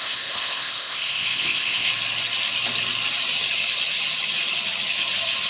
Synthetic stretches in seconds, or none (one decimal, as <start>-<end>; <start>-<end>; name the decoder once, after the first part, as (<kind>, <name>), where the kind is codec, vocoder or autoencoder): 0.0-1.9 (codec, ZipCodec)